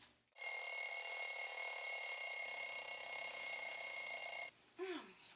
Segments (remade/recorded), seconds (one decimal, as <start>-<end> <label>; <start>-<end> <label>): 0.0-1.1 recorded; 1.1-4.2 remade; 4.2-5.4 recorded